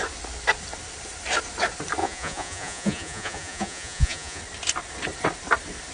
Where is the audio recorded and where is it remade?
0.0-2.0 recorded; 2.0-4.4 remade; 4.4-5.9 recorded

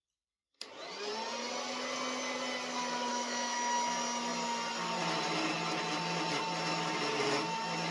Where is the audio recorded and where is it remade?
0.0-3.1 recorded; 3.1-3.9 remade; 3.9-7.9 recorded

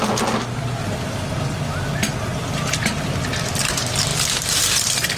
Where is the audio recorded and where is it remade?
0.0-0.8 recorded; 0.8-1.6 remade; 1.6-4.1 recorded; 4.1-5.2 remade

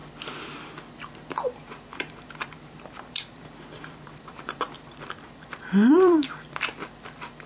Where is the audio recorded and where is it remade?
0.0-1.3 recorded; 1.3-7.5 remade